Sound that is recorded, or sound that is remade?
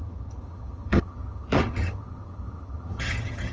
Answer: remade